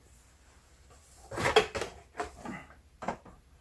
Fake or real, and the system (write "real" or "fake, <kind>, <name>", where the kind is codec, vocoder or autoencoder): real